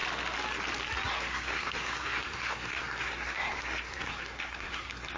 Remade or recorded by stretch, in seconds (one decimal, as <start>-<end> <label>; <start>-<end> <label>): 0.0-1.1 recorded; 1.1-5.2 remade